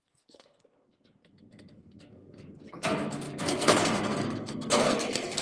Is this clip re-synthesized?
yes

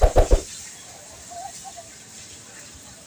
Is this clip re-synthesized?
no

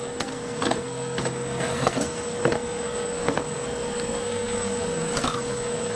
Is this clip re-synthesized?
yes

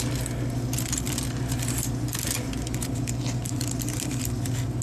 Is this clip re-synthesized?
no